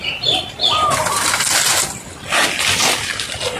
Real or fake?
real